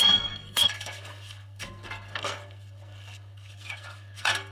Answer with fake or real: fake